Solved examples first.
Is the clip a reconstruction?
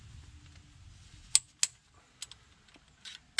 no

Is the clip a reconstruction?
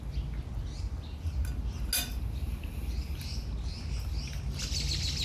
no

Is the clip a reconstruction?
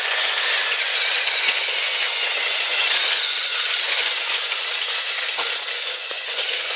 yes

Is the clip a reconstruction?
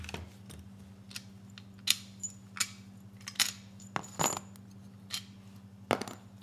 no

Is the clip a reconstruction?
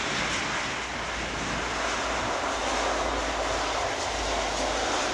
no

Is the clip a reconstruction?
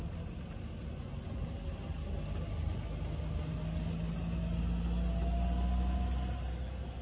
no